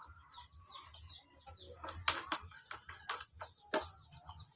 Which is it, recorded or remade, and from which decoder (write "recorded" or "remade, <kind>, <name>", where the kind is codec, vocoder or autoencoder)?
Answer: recorded